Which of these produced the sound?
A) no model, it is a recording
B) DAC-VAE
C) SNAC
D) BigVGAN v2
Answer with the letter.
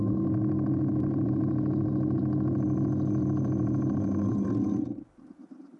A